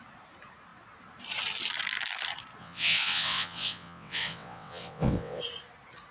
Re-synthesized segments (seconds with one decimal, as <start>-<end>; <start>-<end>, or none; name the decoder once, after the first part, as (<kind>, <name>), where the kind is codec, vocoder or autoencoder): 2.6-5.4 (vocoder, WaveNeXt)